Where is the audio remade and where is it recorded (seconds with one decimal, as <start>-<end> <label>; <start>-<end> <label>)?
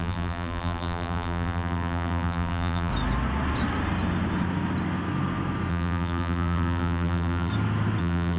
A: 0.0-2.9 remade; 2.9-5.7 recorded; 5.7-7.5 remade; 7.5-8.0 recorded; 8.0-8.4 remade